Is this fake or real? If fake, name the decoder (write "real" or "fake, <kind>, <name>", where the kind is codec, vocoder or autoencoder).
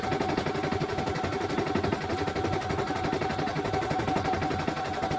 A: real